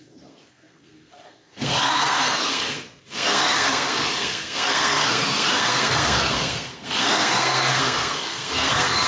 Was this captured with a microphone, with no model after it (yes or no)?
no